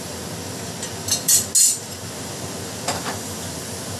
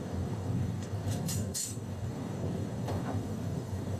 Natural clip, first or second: first